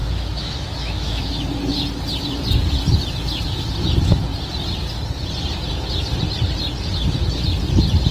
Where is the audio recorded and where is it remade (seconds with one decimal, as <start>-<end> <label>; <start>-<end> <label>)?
0.0-1.5 remade; 1.5-8.1 recorded